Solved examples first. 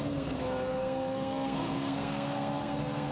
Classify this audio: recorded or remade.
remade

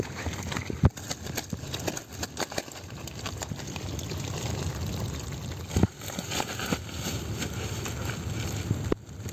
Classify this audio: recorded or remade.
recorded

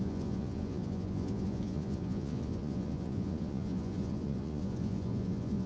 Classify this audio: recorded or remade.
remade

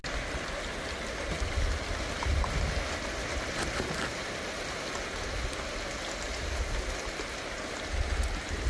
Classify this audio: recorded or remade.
recorded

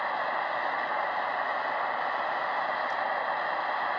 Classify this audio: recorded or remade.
recorded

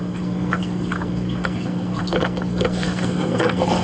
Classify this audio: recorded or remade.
remade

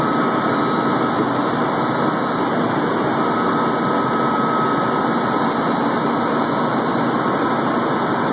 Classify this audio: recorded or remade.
recorded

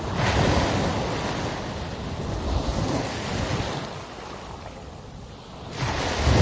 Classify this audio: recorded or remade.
recorded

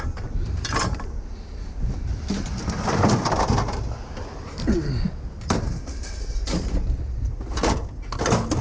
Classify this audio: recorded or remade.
recorded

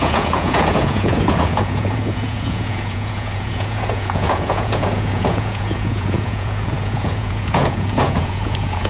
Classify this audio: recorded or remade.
remade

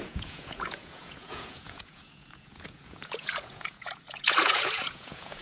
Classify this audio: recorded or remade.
remade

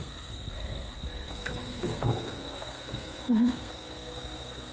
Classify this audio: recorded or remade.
remade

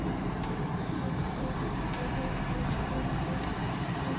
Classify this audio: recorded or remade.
remade